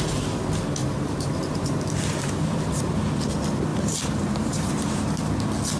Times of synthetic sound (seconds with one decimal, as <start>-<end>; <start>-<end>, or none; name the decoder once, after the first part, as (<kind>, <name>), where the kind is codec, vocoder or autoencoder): 0.8-1.8 (vocoder, BigVGAN v2); 3.7-4.9